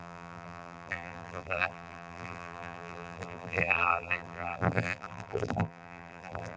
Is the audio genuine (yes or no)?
no